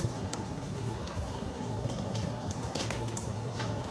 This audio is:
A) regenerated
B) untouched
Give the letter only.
A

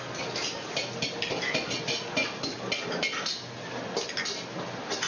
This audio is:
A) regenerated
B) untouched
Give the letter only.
B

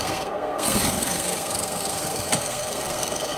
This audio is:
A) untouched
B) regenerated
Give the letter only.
B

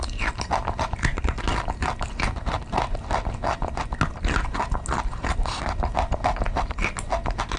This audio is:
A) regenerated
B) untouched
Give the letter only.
B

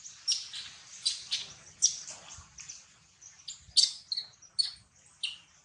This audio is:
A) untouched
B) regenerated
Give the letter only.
A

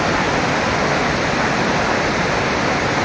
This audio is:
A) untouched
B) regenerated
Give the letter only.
A